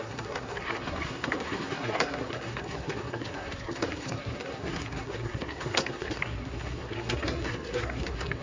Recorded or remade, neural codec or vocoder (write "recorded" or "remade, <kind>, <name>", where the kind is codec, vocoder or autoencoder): remade, codec, SNAC